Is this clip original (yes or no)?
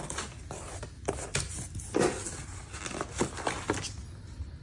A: yes